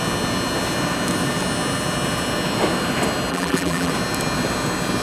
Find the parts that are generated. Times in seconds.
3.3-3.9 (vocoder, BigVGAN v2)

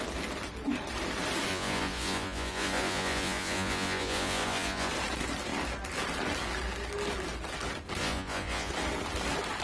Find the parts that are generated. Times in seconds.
1.5-4.9 (vocoder, Vocos); 8.0-8.7

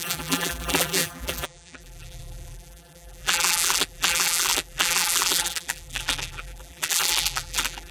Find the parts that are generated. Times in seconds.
0.0-7.9 (vocoder, BigVGAN v2)

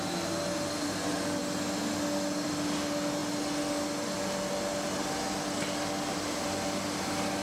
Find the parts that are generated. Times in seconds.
none